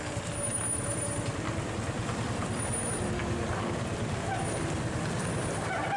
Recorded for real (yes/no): yes